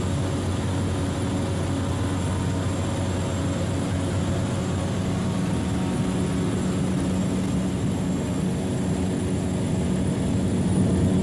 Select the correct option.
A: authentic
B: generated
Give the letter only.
A